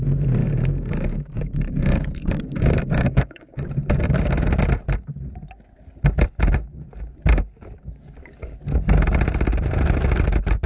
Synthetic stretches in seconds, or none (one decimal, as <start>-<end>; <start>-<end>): 0.4-3.9